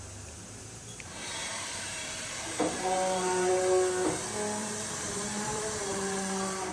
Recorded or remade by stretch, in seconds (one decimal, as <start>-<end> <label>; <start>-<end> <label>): 0.0-1.4 recorded; 1.4-3.5 remade; 3.5-4.6 recorded; 4.6-6.7 remade